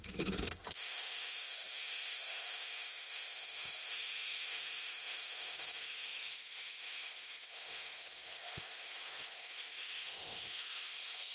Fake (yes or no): yes